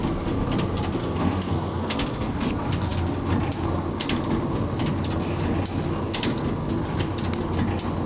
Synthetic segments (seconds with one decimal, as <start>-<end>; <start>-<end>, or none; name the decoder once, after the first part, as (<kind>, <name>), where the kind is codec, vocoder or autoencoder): 1.0-2.5 (codec, SNAC)